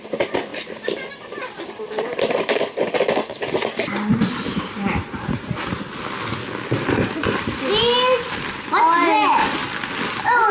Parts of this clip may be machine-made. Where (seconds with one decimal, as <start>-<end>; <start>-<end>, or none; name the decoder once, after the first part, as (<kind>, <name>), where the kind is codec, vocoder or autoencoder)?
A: 4.1-5.9 (vocoder, BigVGAN v2)